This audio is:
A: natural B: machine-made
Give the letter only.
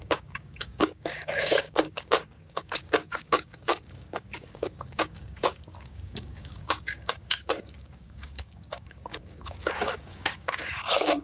B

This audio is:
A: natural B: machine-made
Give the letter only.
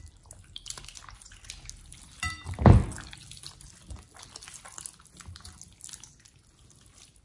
A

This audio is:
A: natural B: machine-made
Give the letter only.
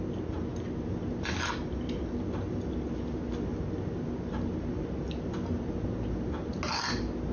A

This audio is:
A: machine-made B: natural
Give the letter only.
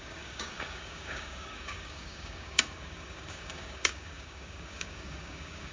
A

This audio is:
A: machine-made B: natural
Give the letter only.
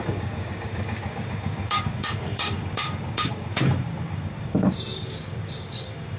A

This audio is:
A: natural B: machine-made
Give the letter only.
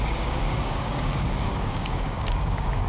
B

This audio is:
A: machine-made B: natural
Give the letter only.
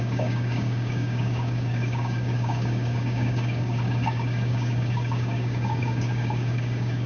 A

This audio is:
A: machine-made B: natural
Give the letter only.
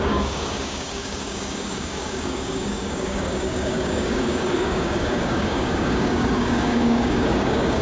A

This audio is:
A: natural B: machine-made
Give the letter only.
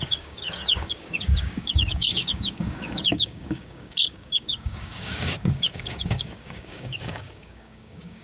B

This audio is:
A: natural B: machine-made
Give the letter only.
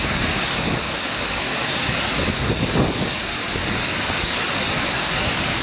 B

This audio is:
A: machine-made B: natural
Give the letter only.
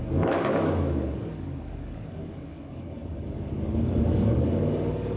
A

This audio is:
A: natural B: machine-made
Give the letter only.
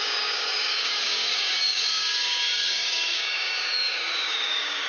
B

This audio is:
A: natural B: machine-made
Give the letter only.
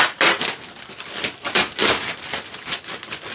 A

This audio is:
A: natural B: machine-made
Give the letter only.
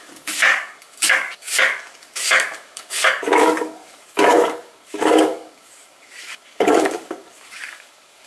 B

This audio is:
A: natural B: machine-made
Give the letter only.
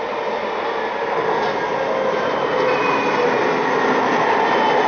A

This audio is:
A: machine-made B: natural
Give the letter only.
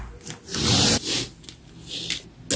B